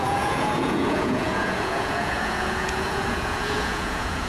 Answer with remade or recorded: remade